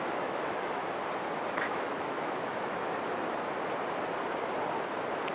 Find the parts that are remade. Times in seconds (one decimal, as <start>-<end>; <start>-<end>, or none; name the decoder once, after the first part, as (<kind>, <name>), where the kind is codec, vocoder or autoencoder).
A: 0.0-0.8 (autoencoder, DAC-VAE); 1.5-2.8